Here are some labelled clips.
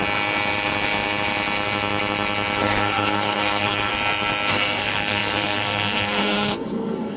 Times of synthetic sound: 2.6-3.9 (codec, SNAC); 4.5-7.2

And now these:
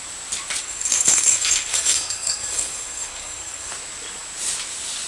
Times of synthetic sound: 0.6-3.7 (codec, SNAC)

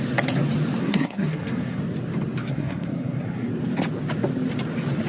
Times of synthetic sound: 0.8-1.8 (codec, SNAC); 2.4-3.5

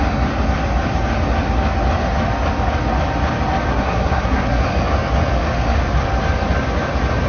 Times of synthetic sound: 3.7-4.6 (codec, SNAC)